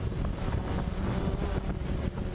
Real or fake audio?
real